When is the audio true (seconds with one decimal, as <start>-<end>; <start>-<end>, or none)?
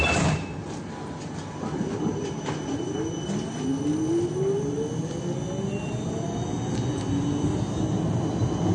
0.0-8.7